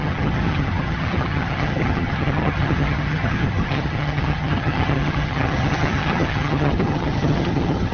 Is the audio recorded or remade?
remade